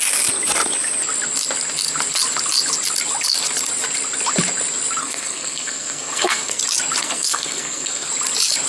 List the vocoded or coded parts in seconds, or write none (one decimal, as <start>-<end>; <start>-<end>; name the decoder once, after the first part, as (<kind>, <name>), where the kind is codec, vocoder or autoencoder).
5.0-6.6 (codec, SNAC); 7.0-8.1